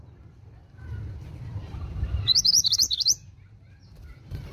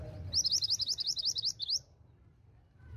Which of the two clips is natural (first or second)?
second